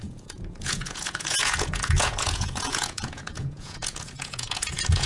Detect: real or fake fake